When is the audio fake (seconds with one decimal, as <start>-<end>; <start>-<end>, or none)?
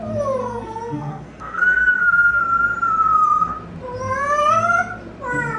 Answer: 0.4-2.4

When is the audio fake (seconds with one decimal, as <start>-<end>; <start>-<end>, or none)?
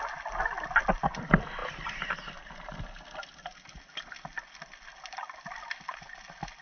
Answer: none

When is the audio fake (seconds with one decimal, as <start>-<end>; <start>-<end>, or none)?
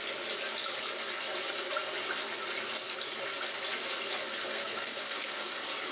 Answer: 4.5-5.5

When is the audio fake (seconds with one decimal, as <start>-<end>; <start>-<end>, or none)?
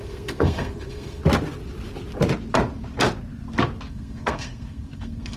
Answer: 0.0-1.2; 3.9-5.4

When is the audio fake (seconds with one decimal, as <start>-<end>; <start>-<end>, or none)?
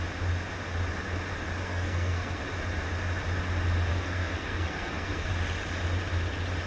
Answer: 1.6-2.4; 3.9-5.3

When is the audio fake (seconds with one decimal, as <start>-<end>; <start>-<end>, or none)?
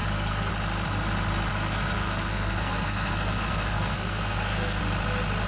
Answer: 0.0-0.5; 1.5-4.8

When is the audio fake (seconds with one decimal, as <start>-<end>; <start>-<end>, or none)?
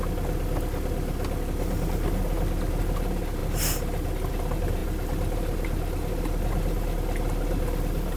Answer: none